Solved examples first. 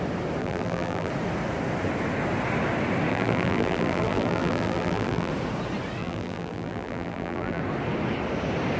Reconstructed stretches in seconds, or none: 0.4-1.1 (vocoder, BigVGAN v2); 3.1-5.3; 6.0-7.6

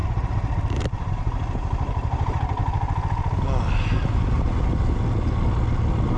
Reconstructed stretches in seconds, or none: 0.0-2.6 (vocoder, BigVGAN v2)